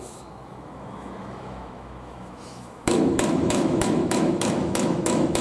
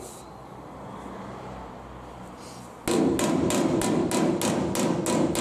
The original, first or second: second